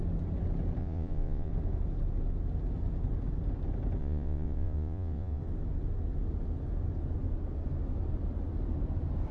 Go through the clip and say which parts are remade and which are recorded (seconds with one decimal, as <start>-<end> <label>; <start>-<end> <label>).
0.0-0.8 recorded; 0.8-1.5 remade; 1.5-4.0 recorded; 4.0-5.4 remade; 5.4-9.3 recorded